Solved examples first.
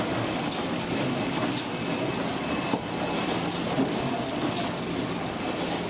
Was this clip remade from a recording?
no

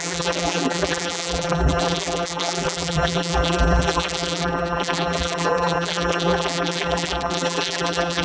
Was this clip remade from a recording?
yes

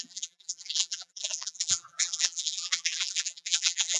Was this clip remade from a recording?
yes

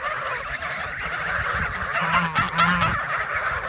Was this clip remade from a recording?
no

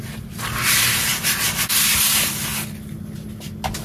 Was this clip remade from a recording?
no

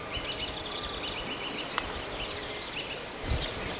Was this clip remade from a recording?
no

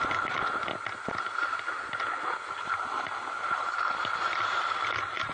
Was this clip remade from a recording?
no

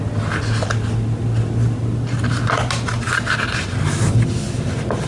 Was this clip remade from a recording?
no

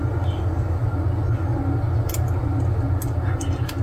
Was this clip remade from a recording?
no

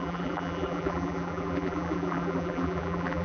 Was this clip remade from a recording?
yes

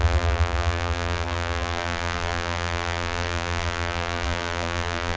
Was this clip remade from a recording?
yes